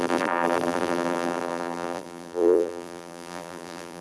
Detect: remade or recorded remade